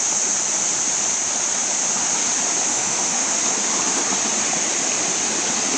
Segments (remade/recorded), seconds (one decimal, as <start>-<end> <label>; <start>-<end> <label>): 0.0-2.7 recorded; 2.7-3.4 remade; 3.4-5.8 recorded